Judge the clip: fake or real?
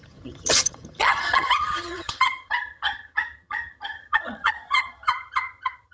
fake